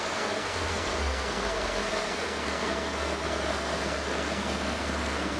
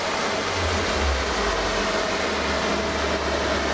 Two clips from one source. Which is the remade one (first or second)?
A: first